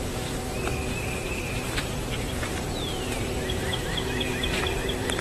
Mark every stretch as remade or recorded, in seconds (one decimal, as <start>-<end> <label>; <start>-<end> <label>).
0.0-5.2 remade